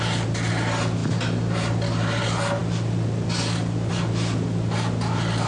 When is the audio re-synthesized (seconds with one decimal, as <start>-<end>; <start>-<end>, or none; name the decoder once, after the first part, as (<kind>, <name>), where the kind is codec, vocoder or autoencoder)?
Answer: none